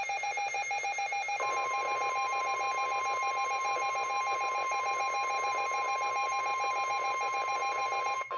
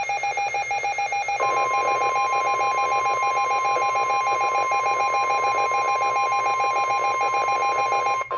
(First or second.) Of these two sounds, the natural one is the second